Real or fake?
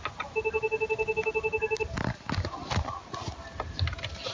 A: real